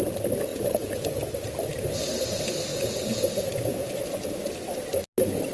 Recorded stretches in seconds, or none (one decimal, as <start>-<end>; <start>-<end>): 0.0-0.5; 1.3-2.7; 4.5-5.5